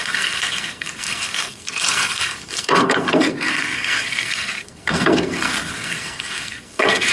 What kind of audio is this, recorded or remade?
remade